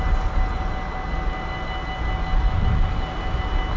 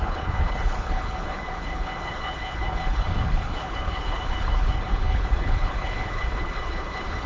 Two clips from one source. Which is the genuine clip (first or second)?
first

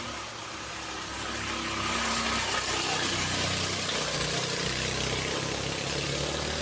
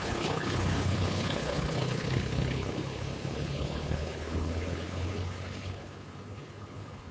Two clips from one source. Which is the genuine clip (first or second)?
first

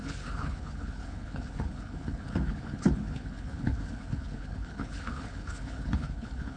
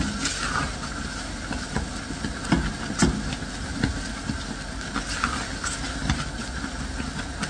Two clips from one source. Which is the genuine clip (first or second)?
second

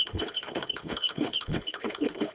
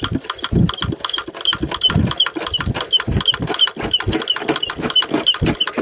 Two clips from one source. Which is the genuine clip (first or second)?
second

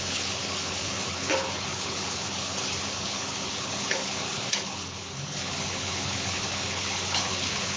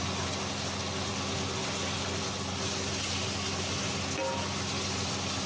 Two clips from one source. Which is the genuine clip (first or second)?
second